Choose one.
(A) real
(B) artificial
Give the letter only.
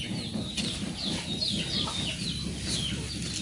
A